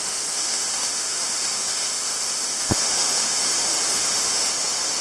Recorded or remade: remade